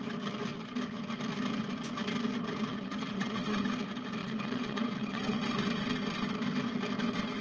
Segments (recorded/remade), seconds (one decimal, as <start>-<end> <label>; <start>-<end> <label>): 0.0-2.7 recorded; 2.7-3.6 remade; 3.6-4.2 recorded; 4.2-5.4 remade; 5.4-7.4 recorded